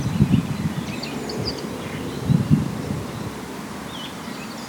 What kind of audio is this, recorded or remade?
recorded